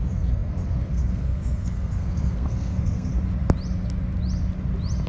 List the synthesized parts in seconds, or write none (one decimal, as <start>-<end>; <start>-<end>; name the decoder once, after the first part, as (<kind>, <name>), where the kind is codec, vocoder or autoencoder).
0.0-3.1 (codec, SNAC)